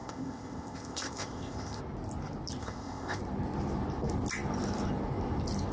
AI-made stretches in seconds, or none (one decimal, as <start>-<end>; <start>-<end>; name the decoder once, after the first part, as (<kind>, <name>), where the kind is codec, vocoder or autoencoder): 0.0-1.8 (codec, ZipCodec); 2.6-3.2